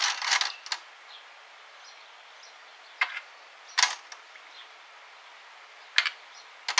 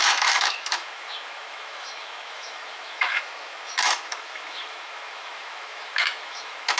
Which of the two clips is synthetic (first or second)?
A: second